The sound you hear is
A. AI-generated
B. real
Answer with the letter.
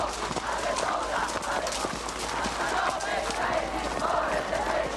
B